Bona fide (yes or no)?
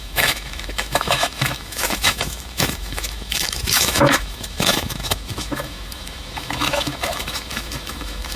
no